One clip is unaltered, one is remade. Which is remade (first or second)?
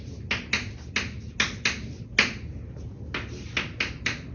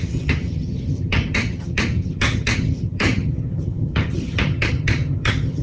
second